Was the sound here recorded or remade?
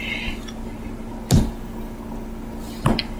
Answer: recorded